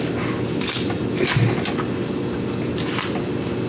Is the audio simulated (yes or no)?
no